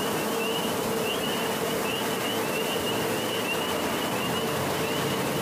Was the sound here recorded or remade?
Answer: recorded